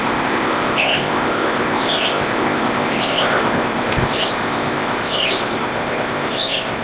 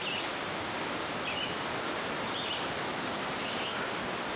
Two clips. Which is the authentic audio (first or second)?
second